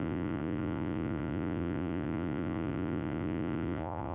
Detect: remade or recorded remade